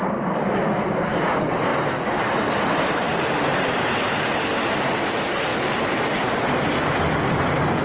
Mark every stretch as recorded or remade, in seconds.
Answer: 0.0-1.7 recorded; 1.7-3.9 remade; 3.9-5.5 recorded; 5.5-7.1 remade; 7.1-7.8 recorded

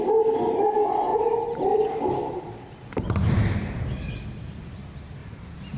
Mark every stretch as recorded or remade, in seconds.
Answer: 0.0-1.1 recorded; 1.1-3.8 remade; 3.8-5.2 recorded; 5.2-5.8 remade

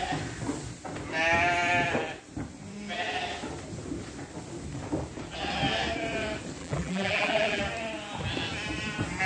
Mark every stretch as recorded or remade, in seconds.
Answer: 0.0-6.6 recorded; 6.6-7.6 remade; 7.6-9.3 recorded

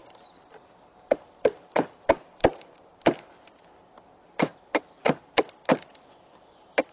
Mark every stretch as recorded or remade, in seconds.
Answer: 0.0-1.8 remade; 1.8-6.9 recorded

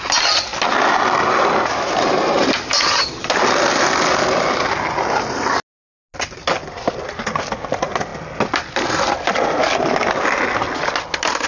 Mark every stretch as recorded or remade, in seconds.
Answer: 0.0-11.5 recorded